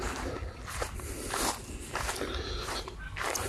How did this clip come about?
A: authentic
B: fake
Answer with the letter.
A